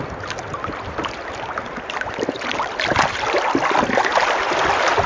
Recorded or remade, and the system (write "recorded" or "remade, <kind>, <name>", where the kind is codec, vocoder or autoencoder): recorded